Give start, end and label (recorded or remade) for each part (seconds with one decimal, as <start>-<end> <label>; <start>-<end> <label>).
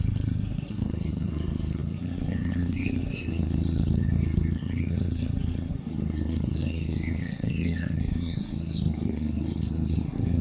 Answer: 0.0-10.4 remade